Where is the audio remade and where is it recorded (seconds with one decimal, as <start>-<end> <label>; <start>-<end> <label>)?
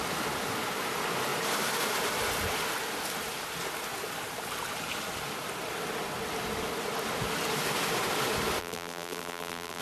0.0-8.6 recorded; 8.6-9.8 remade